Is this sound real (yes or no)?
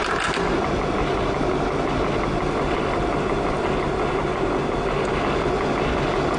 yes